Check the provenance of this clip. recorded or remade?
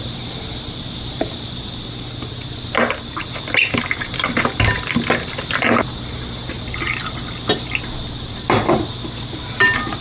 recorded